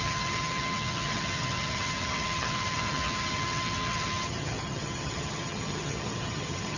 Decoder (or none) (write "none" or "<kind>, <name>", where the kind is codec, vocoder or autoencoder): vocoder, HiFi-GAN